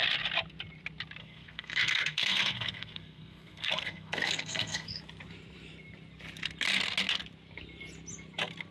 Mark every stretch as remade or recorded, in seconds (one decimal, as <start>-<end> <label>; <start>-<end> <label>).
0.0-1.2 recorded; 1.2-5.0 remade; 5.0-8.7 recorded